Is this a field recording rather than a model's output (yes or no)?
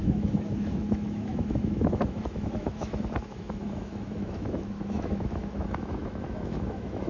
no